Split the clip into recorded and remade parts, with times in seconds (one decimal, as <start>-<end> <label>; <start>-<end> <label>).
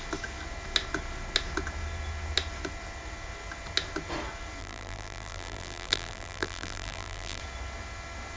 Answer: 0.0-4.6 recorded; 4.6-7.4 remade; 7.4-8.4 recorded